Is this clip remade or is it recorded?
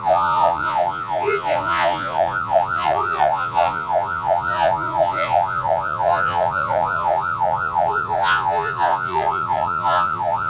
remade